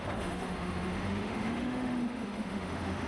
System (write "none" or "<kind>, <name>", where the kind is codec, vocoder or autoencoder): autoencoder, DAC-VAE